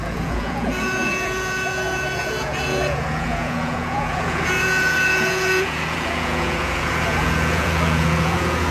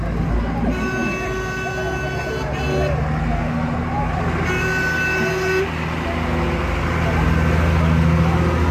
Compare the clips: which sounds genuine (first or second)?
second